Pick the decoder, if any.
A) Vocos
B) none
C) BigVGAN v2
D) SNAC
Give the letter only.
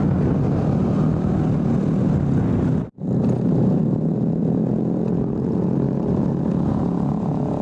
B